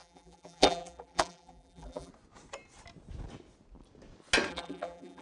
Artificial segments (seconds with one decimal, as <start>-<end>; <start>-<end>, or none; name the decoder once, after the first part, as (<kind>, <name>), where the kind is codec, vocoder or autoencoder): 0.0-2.1 (vocoder, BigVGAN v2); 4.5-5.2